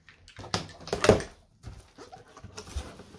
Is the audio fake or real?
real